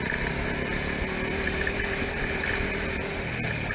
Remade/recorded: recorded